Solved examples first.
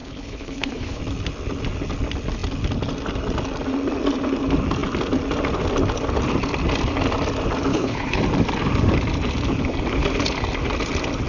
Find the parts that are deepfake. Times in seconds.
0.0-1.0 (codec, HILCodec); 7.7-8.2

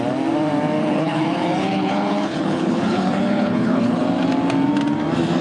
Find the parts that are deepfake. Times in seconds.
0.8-4.0 (codec, HILCodec)

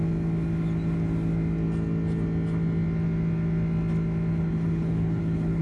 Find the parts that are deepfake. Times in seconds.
4.3-5.6 (codec, HILCodec)

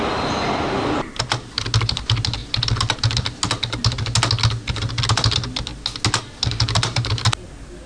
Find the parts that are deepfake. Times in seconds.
none

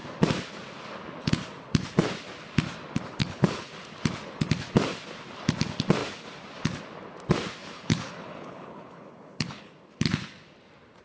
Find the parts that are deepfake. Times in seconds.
3.2-3.7 (codec, HILCodec); 7.6-9.7

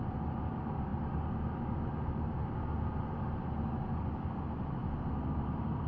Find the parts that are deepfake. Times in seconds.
none

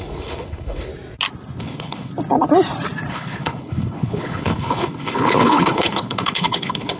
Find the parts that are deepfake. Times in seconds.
0.0-0.9 (codec, HILCodec); 1.6-2.1; 3.1-7.0